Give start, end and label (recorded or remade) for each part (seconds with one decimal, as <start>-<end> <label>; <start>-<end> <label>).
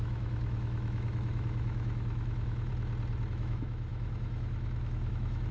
0.0-2.7 remade; 2.7-3.3 recorded; 3.3-5.5 remade